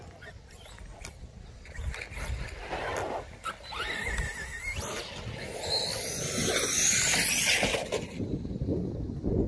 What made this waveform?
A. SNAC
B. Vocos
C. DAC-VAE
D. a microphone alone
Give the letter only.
D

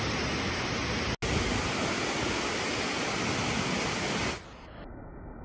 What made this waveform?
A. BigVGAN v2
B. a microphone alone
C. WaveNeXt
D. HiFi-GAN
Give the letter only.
B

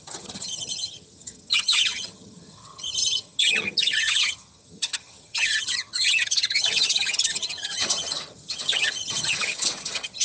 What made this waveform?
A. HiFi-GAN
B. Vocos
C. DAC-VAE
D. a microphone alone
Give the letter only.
A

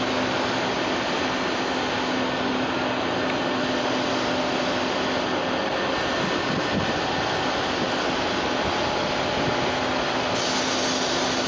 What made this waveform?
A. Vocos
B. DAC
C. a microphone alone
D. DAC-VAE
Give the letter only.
C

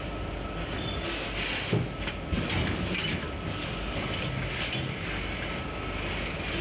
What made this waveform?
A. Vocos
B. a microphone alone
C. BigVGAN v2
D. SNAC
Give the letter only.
B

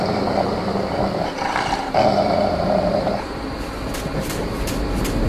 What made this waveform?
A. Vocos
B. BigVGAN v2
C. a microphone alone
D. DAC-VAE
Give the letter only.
B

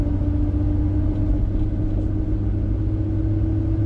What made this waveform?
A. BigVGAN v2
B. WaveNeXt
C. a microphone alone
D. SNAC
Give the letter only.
C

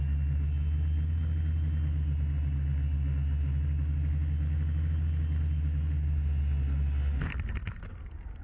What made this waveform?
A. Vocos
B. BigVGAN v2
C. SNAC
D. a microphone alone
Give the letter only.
D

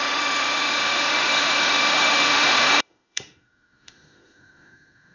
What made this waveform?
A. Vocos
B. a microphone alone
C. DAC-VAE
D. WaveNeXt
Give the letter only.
C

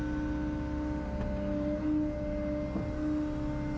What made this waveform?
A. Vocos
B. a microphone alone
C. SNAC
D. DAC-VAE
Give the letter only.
B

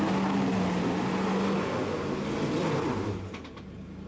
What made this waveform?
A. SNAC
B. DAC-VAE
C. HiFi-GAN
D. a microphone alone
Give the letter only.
D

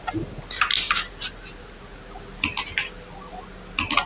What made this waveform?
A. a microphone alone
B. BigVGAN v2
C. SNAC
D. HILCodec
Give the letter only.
A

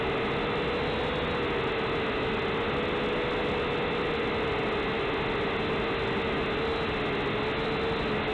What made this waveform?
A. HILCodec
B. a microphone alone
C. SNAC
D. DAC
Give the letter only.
B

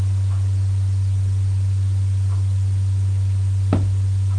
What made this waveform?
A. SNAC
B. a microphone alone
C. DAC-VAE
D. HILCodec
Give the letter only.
B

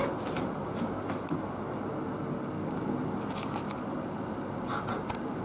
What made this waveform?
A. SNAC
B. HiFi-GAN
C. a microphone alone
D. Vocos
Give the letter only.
C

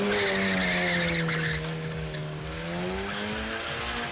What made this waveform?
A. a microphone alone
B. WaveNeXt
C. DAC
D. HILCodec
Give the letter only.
A